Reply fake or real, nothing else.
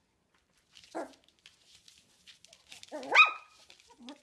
real